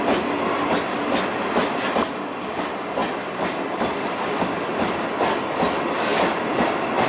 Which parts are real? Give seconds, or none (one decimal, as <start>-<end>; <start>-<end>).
0.0-7.1